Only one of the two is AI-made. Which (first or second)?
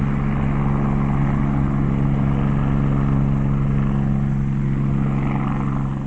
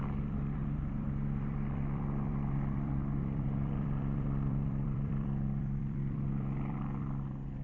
second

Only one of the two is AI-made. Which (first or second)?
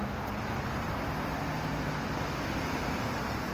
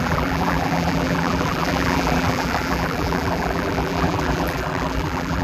second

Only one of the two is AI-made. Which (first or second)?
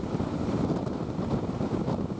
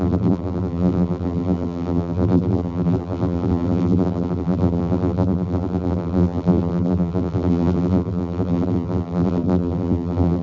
second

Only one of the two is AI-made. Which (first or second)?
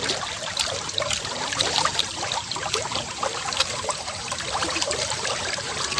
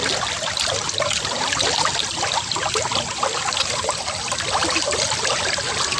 first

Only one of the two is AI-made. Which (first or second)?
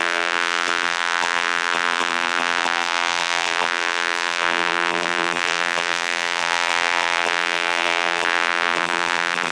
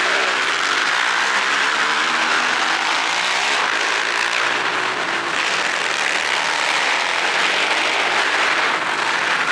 first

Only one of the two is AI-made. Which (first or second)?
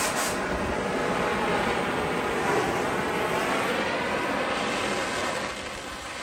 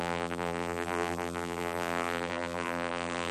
second